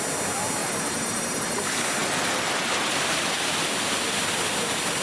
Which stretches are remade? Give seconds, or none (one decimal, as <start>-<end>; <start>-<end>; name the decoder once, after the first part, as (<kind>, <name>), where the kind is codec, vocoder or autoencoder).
0.6-1.6 (vocoder, BigVGAN v2); 2.0-2.9